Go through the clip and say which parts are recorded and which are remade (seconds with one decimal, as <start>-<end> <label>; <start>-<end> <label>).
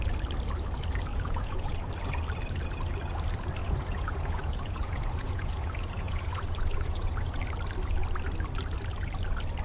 0.0-1.1 recorded; 1.1-1.9 remade; 1.9-3.6 recorded; 3.6-7.4 remade; 7.4-9.6 recorded